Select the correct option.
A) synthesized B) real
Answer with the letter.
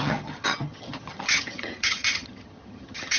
A